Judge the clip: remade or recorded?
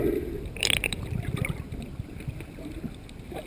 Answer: remade